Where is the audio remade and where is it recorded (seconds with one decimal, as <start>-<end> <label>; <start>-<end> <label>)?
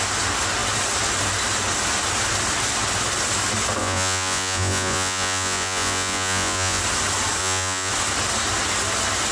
0.0-3.8 recorded; 3.8-6.8 remade; 6.8-7.4 recorded; 7.4-7.9 remade; 7.9-9.3 recorded